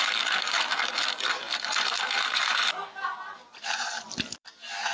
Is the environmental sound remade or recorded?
remade